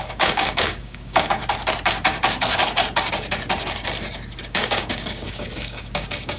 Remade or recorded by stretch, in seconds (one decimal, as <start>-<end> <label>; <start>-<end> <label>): 0.0-1.4 remade; 1.4-4.4 recorded; 4.4-6.4 remade